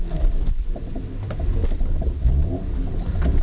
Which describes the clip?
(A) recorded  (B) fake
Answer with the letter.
B